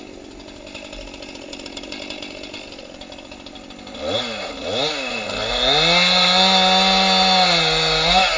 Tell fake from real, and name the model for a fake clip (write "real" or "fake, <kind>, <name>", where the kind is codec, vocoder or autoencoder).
real